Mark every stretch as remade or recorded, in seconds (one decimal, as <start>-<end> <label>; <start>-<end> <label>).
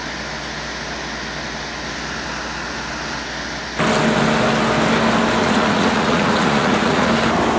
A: 0.0-5.4 recorded; 5.4-7.1 remade; 7.1-7.6 recorded